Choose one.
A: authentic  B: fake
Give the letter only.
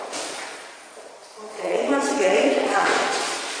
B